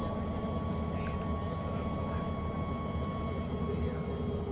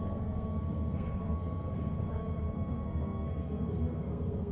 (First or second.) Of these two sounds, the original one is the first